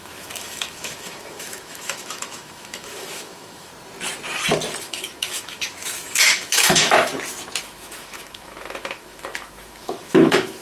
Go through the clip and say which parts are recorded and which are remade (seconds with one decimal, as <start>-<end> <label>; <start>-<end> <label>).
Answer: 0.0-3.7 remade; 3.7-4.8 recorded; 4.8-7.1 remade; 7.1-7.6 recorded; 7.6-10.6 remade